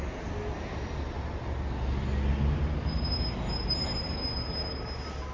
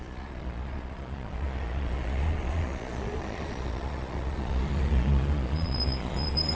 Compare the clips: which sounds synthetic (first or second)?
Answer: second